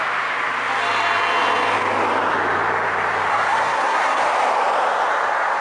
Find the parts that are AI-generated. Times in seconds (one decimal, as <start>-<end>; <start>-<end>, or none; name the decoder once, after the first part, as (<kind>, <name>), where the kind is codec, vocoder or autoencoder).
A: 3.3-4.2 (codec, SNAC)